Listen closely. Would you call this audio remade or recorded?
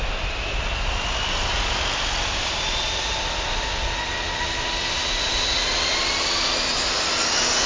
recorded